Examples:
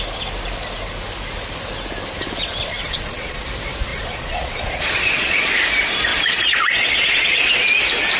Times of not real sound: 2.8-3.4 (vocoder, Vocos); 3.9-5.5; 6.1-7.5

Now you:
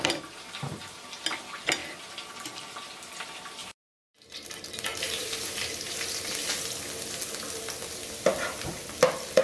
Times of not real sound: 3.6-4.5 (vocoder, BigVGAN v2); 4.9-6.3; 8.3-9.0